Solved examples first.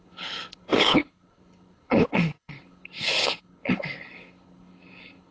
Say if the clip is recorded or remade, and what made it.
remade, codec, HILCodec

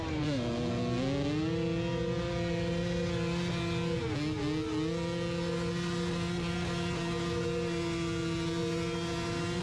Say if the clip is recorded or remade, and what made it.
recorded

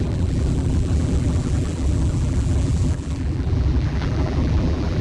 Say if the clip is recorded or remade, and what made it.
remade, vocoder, BigVGAN v2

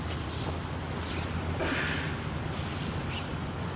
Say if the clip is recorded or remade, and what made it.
recorded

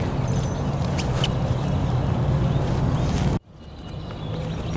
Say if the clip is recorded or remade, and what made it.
recorded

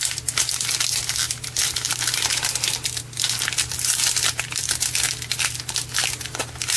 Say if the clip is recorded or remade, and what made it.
recorded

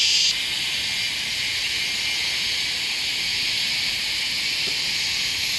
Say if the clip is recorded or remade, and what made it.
recorded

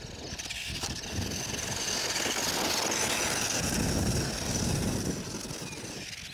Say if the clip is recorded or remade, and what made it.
recorded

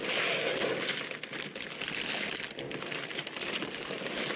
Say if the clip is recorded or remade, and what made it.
recorded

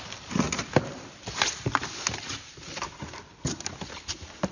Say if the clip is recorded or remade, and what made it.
recorded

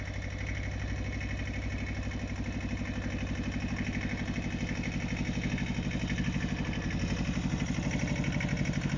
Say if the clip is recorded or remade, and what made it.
recorded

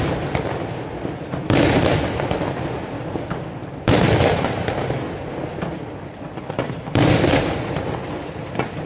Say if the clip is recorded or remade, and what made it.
recorded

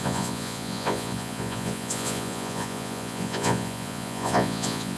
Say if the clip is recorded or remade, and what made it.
remade, vocoder, Vocos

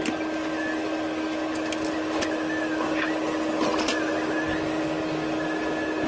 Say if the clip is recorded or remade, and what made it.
recorded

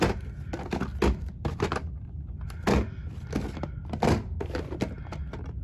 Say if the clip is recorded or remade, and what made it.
recorded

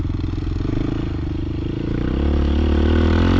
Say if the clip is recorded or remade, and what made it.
recorded